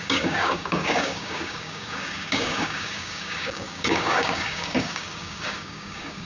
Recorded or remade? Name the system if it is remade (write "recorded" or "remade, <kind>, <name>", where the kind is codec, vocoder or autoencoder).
remade, codec, DAC